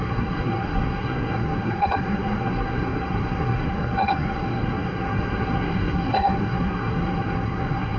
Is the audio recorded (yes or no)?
no